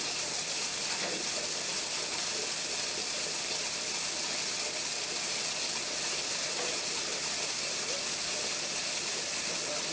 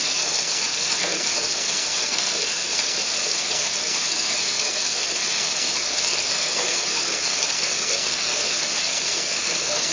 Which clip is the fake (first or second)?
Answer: second